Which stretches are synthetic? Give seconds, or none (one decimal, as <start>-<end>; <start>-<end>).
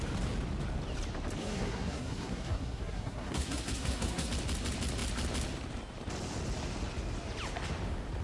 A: 1.4-4.3